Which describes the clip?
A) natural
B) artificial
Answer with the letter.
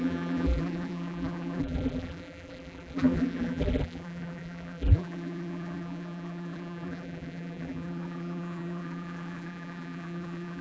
B